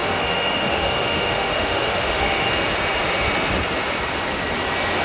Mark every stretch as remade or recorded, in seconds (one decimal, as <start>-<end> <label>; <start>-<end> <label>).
0.0-2.5 remade; 2.5-5.0 recorded